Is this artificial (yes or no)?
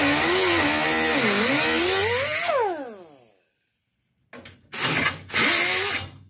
no